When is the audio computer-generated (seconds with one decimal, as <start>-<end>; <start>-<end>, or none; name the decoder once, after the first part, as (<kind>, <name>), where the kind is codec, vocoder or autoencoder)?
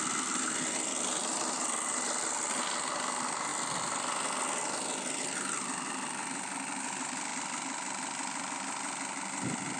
none